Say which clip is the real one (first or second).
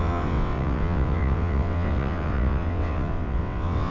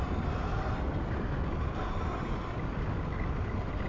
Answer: second